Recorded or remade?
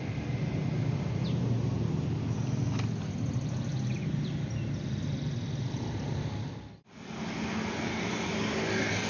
recorded